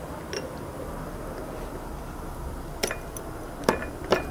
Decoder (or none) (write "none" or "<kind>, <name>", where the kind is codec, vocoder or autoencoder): none